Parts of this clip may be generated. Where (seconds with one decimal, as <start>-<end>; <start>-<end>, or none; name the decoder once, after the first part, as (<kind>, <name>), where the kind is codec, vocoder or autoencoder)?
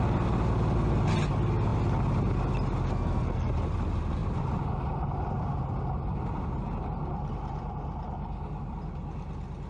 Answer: 2.9-3.5 (codec, SNAC)